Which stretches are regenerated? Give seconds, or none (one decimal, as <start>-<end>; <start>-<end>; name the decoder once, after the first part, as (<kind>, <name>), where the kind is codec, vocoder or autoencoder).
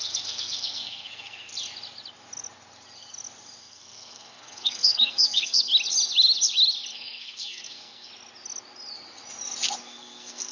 0.0-1.5 (codec, SNAC); 3.6-5.7; 6.9-8.1; 9.8-10.5